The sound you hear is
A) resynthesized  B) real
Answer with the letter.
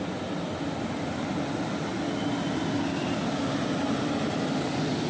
B